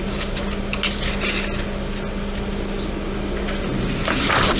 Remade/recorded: recorded